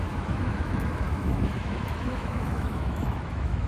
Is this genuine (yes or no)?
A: no